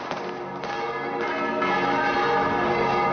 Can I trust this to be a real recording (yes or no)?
yes